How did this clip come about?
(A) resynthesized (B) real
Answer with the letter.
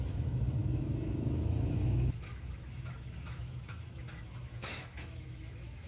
A